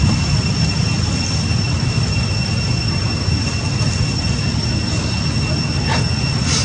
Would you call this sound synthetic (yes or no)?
no